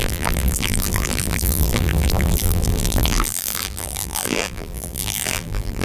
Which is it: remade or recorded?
remade